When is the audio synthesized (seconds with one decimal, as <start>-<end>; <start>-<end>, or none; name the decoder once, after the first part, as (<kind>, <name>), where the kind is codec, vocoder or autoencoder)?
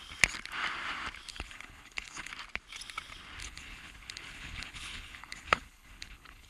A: 1.3-2.3 (codec, HILCodec); 3.4-6.5